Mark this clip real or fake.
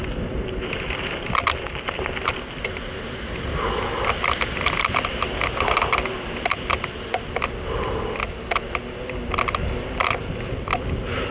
real